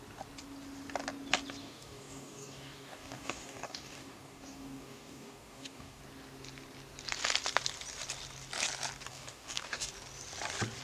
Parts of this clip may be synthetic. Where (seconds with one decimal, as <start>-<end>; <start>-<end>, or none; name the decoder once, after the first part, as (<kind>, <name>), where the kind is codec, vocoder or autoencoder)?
1.6-6.0 (codec, DAC); 9.1-9.9